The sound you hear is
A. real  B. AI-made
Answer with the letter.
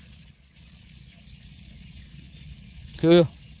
B